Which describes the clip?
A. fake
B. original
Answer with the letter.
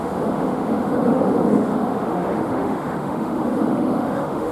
A